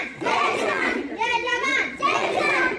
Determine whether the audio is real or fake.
fake